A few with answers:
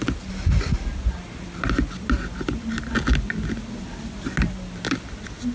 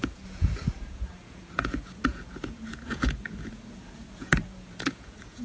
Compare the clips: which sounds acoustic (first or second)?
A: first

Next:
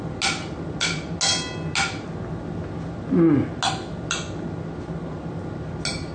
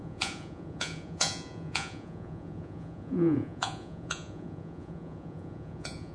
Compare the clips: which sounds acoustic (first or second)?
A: first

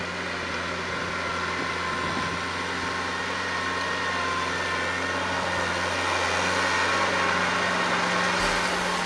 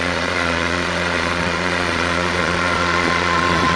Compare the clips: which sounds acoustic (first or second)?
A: first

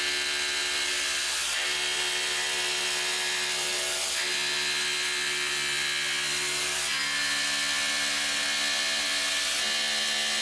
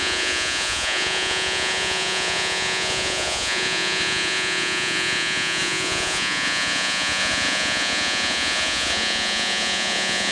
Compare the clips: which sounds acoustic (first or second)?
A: first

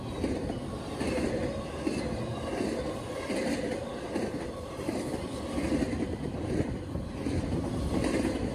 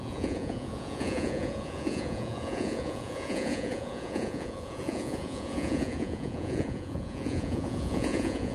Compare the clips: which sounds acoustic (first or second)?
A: first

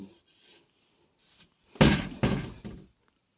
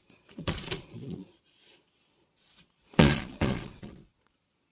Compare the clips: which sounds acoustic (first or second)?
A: first